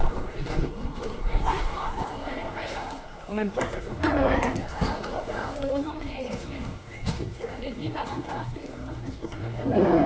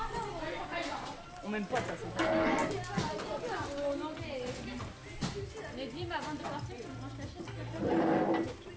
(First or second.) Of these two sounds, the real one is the second